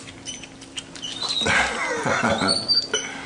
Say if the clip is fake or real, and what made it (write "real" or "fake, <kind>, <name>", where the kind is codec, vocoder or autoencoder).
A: real